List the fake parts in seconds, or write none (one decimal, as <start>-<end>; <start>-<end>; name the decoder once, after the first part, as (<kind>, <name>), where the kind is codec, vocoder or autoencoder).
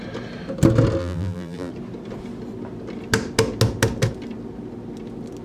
1.0-1.7 (vocoder, BigVGAN v2)